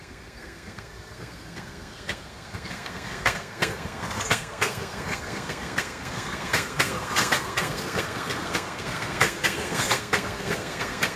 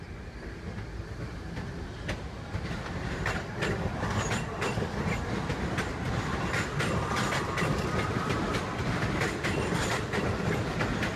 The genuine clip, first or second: second